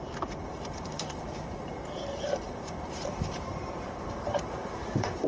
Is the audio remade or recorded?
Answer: remade